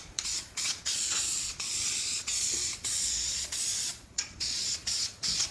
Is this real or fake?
fake